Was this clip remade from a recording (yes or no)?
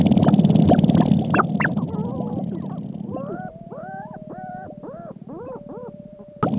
no